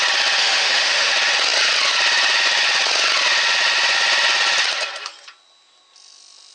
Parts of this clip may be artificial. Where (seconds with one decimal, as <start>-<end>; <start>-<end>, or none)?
0.4-1.1